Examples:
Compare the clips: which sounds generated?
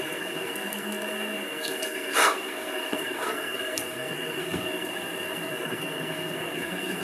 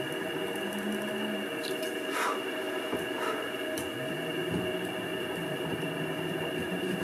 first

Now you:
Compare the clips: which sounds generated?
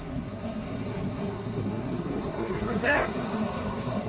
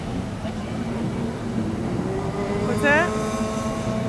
first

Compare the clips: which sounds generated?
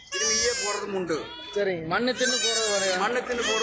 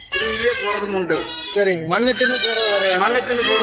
second